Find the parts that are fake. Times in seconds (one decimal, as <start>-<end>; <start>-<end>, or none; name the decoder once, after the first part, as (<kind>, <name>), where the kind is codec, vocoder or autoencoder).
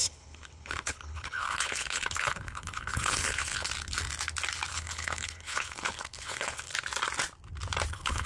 0.0-3.7 (codec, HILCodec); 4.7-6.7; 7.9-8.3